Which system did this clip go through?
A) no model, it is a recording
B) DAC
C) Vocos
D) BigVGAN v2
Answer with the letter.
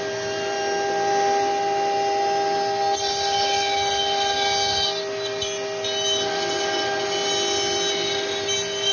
A